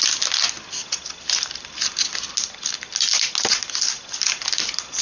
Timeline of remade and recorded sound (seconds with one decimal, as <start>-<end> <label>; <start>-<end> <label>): 0.0-5.0 recorded